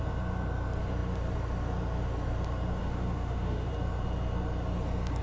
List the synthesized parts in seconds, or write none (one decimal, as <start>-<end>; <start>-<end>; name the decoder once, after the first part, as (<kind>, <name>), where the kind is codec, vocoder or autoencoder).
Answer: 2.8-3.7 (autoencoder, DAC-VAE)